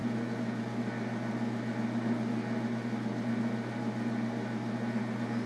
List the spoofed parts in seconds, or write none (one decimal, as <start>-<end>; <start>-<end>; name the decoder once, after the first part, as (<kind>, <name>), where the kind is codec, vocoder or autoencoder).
none